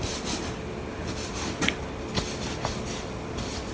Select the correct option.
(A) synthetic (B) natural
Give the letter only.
B